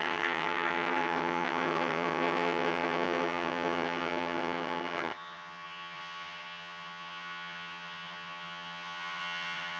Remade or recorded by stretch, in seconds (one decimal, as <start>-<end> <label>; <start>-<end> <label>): 0.0-9.8 remade